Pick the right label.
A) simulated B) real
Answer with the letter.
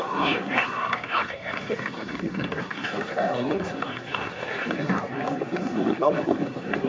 A